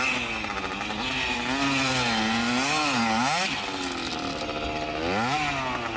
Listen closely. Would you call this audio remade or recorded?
recorded